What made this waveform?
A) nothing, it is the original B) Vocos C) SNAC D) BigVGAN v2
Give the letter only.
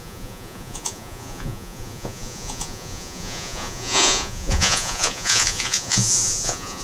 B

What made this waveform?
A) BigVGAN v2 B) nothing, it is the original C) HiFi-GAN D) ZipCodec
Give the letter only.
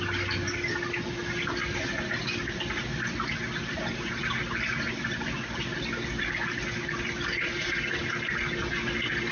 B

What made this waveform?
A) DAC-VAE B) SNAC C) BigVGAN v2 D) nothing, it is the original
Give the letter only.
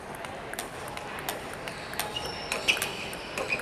D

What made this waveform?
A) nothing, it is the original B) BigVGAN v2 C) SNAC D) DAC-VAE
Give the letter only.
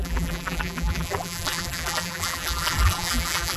B